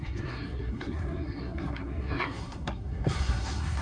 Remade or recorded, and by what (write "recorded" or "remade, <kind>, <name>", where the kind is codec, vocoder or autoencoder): remade, codec, SNAC